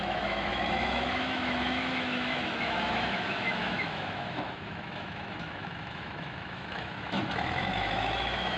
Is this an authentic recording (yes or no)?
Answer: no